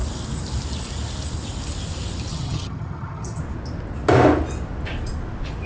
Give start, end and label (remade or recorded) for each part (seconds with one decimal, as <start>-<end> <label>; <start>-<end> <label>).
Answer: 0.0-2.3 recorded; 2.3-3.4 remade; 3.4-5.7 recorded